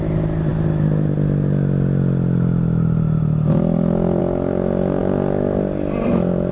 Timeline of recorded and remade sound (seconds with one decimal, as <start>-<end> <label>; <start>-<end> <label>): 0.0-6.5 recorded